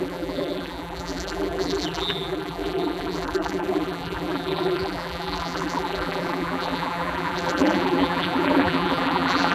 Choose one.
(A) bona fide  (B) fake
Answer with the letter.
B